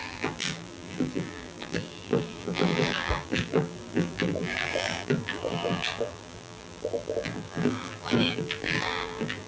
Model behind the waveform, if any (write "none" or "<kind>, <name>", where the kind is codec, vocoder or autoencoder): vocoder, BigVGAN v2